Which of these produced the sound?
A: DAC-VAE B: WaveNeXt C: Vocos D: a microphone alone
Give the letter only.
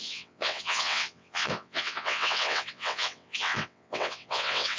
B